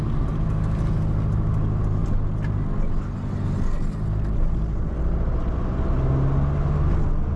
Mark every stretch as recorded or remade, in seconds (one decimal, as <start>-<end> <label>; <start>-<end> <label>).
0.0-7.4 recorded